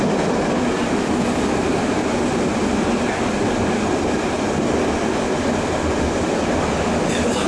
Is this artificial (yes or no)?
no